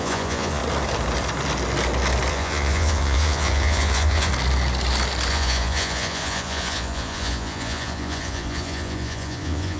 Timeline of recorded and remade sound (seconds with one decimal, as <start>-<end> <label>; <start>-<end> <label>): 0.0-0.6 remade; 0.6-2.3 recorded; 2.3-4.3 remade; 4.3-5.3 recorded; 5.3-9.8 remade